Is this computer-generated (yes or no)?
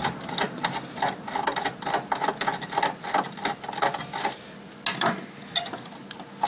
no